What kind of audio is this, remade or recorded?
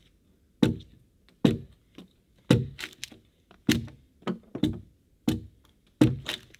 recorded